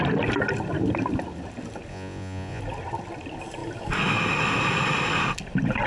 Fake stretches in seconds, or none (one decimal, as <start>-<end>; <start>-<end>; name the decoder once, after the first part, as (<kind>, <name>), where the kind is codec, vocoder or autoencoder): 1.9-2.6 (vocoder, Vocos)